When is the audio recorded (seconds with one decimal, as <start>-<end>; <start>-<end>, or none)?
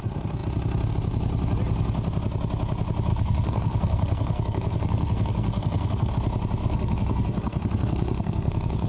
0.0-3.1; 6.1-6.6